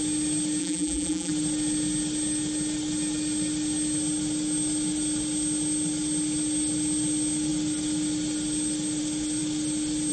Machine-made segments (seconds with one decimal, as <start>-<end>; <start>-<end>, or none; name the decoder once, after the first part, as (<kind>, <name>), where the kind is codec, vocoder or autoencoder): 0.6-1.3 (vocoder, BigVGAN v2)